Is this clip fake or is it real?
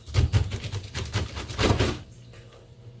fake